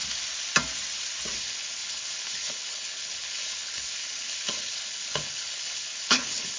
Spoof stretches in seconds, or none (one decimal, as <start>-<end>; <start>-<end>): 1.4-6.6